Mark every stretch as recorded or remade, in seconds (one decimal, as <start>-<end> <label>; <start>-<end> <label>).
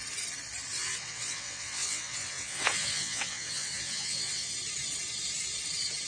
0.0-0.8 recorded; 0.8-4.5 remade; 4.5-6.1 recorded